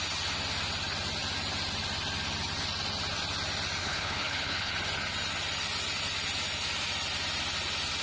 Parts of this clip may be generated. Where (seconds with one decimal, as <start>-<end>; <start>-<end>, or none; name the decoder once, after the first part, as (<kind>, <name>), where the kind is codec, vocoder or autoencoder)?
3.8-4.7 (codec, HILCodec)